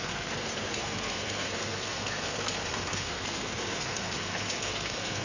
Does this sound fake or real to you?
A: fake